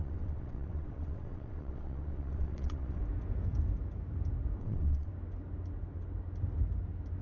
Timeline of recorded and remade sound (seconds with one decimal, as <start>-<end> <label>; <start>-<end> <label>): 0.0-3.0 remade; 3.0-4.6 recorded; 4.6-5.1 remade; 5.1-7.2 recorded